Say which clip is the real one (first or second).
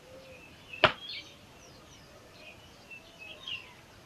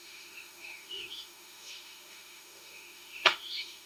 first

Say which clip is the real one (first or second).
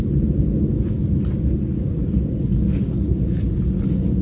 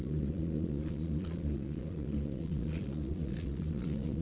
first